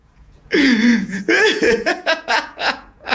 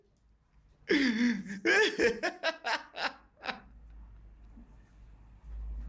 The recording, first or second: second